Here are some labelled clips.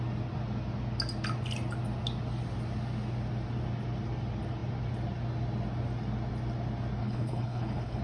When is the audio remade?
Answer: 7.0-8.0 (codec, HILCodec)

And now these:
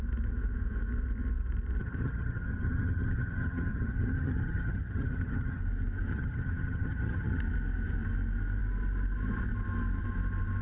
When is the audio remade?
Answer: 1.8-5.6 (vocoder, HiFi-GAN); 6.1-7.4

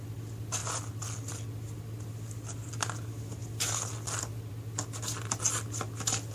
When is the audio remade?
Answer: none

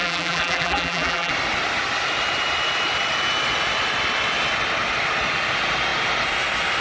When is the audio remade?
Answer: 0.0-1.3 (vocoder, BigVGAN v2)